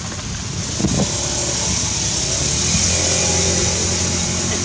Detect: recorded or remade recorded